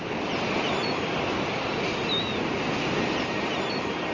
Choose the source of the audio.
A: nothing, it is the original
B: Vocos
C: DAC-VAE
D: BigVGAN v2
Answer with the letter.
A